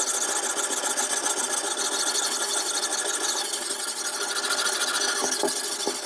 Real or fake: real